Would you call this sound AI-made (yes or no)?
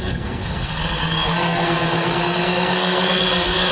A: yes